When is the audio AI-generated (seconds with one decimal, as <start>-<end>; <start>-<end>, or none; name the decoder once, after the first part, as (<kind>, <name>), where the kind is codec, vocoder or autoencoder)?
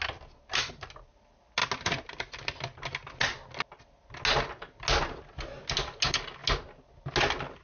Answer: none